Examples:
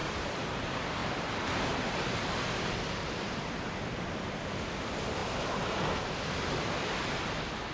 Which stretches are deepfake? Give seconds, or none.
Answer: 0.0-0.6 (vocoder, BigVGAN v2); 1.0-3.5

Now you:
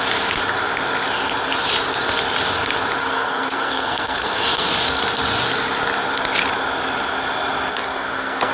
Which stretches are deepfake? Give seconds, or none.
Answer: 3.0-4.7 (codec, SNAC); 7.7-8.5

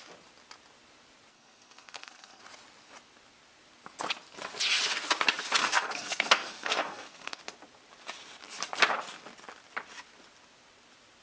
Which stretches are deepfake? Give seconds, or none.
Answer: 1.3-2.4 (codec, SNAC); 5.6-7.4

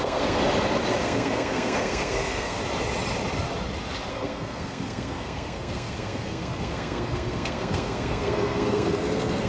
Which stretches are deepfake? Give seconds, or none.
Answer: 0.0-0.4 (codec, SNAC); 1.0-2.6; 4.1-9.5

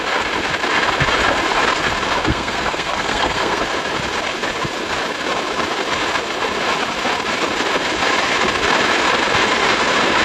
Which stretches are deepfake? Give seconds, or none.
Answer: 2.3-3.6 (codec, SNAC)

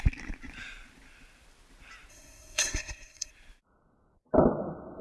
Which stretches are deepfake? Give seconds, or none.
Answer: 2.1-3.3 (codec, SNAC)

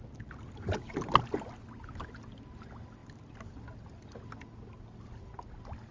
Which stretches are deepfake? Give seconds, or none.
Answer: none

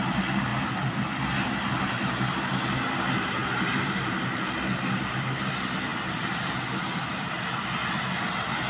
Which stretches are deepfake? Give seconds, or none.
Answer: none